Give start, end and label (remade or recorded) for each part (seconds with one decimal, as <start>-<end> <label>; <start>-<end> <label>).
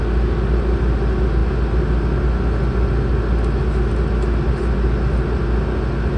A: 0.0-6.2 recorded